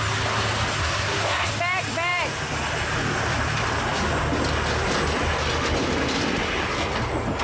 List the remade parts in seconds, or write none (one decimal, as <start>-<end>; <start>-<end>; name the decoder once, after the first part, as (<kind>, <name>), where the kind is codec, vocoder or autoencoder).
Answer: 0.8-1.5 (codec, SNAC)